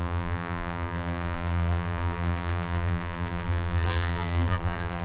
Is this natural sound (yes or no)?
no